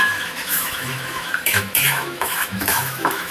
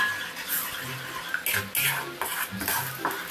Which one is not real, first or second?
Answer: first